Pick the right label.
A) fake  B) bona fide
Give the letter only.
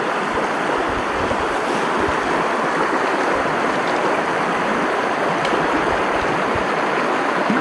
B